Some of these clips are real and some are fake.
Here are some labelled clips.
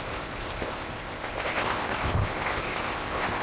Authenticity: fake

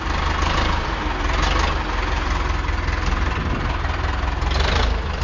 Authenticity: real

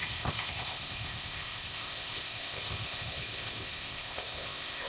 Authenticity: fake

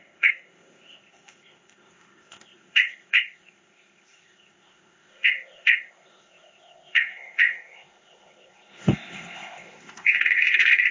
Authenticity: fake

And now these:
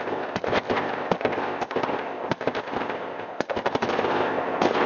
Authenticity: fake